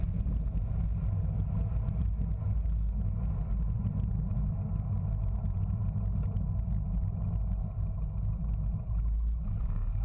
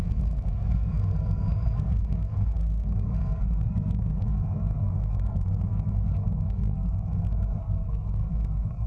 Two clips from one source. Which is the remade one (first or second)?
second